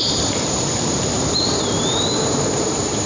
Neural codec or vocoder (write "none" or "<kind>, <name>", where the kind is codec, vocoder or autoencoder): vocoder, BigVGAN v2